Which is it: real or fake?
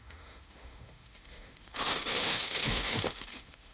fake